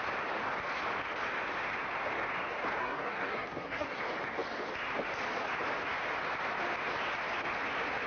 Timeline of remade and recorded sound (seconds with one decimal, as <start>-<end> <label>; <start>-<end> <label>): 0.0-2.8 recorded; 2.8-4.0 remade; 4.0-8.1 recorded